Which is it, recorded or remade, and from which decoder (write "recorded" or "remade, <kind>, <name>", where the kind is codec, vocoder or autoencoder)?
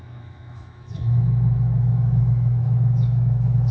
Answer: remade, autoencoder, DAC-VAE